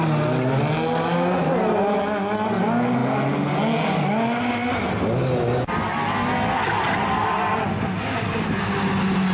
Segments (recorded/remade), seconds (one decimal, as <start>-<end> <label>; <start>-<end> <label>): 0.0-9.3 recorded